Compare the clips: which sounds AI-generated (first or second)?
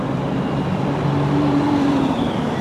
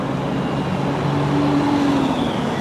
first